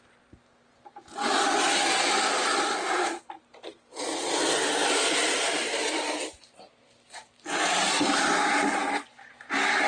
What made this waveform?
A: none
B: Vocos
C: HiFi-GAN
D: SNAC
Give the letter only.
A